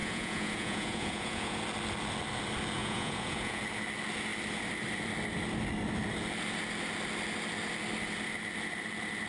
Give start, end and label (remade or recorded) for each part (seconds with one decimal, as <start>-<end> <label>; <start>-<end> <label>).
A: 0.0-1.6 remade; 1.6-2.8 recorded; 2.8-3.6 remade; 3.6-9.3 recorded

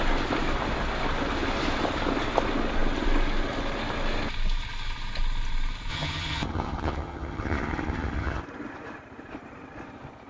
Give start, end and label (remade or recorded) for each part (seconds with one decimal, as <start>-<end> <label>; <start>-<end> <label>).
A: 0.0-5.9 recorded; 5.9-8.4 remade; 8.4-10.3 recorded